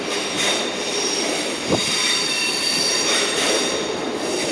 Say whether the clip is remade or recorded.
remade